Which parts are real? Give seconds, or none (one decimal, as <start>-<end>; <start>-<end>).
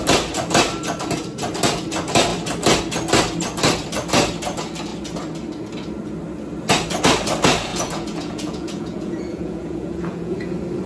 0.0-7.7; 10.5-10.9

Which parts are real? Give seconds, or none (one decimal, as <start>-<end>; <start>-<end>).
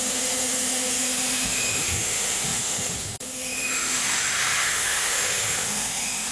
none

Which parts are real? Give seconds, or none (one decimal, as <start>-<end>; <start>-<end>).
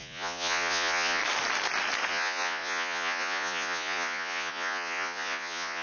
1.2-2.1